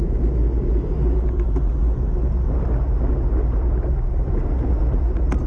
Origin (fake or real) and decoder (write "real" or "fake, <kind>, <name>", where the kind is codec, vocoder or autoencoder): real